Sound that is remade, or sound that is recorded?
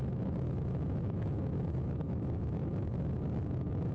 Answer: remade